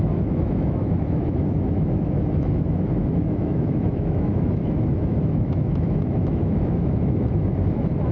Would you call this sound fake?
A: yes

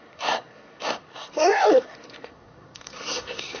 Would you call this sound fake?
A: yes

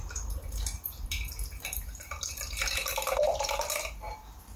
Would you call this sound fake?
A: yes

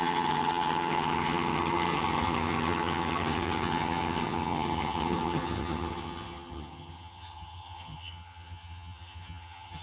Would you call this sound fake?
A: yes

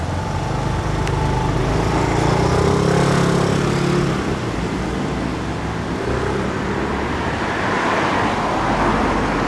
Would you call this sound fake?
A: no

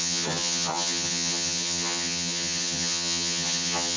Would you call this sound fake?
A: yes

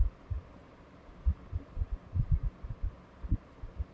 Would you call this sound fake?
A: no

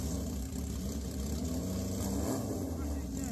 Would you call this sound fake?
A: no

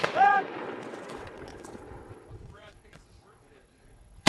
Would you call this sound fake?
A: yes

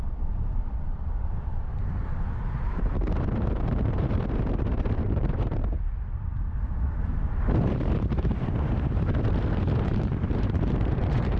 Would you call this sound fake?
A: yes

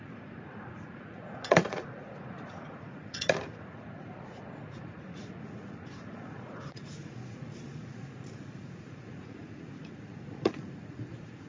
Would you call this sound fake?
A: yes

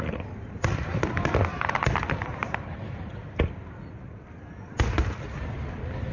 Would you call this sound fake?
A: yes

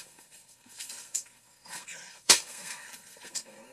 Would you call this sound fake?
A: yes